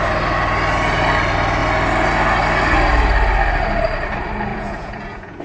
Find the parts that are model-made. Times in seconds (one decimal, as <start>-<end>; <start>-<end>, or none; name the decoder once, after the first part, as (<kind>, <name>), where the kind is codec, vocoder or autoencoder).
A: 4.5-5.4 (vocoder, Vocos)